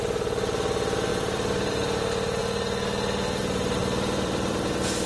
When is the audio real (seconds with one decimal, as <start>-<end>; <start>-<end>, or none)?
0.0-1.1; 2.0-3.8; 4.6-5.1